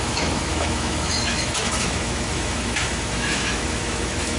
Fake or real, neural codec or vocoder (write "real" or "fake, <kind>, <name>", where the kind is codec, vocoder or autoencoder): fake, autoencoder, DAC-VAE